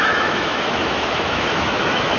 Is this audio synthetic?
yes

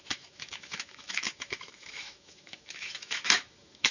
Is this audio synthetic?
yes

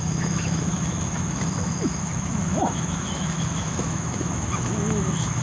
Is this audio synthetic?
yes